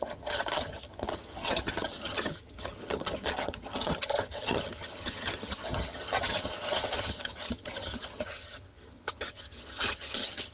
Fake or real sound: fake